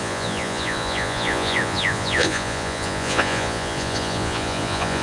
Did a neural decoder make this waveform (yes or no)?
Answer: yes